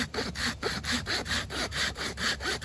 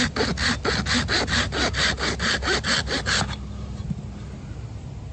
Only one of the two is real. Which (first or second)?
second